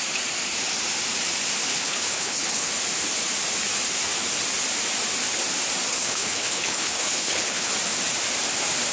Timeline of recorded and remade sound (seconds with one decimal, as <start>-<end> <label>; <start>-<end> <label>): 0.0-1.7 recorded; 1.7-2.7 remade; 2.7-5.9 recorded; 5.9-7.7 remade; 7.7-8.9 recorded